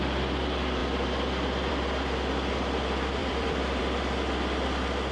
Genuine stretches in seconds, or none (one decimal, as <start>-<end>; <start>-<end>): 0.0-3.2; 3.8-5.1